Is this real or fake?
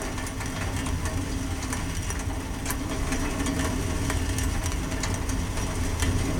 real